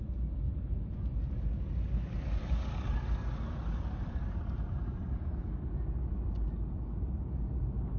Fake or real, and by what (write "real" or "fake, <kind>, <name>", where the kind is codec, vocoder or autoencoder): real